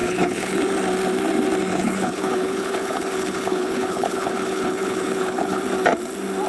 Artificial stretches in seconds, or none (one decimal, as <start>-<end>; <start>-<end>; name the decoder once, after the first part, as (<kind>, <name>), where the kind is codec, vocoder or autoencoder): 0.0-0.6 (codec, HILCodec); 1.7-5.6